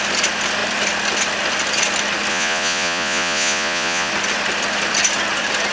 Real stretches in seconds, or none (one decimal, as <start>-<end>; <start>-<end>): 0.0-2.3; 4.1-5.7